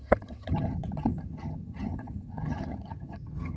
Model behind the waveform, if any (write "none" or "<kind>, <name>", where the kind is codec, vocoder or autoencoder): vocoder, HiFi-GAN